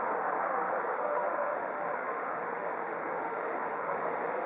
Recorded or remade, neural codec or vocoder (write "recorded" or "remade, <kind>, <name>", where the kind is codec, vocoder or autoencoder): remade, autoencoder, DAC-VAE